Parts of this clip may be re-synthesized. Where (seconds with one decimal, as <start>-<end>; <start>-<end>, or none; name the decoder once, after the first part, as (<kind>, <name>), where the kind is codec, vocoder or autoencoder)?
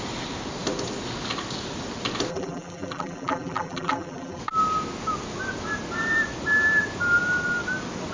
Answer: 2.3-4.4 (vocoder, BigVGAN v2)